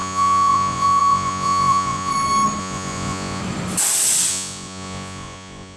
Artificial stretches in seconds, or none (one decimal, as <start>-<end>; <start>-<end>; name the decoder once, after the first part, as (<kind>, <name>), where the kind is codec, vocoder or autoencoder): 0.0-2.1 (vocoder, Vocos); 2.6-3.4; 4.3-5.8